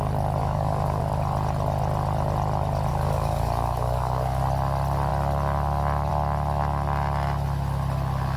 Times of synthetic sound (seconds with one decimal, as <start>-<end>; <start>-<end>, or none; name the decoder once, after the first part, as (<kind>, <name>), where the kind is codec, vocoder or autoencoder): 0.4-1.0 (codec, DAC); 2.9-4.4